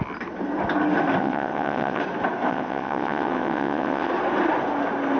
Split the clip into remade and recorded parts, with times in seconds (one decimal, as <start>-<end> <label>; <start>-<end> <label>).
0.0-1.2 recorded; 1.2-2.0 remade; 2.0-2.5 recorded; 2.5-4.1 remade; 4.1-5.2 recorded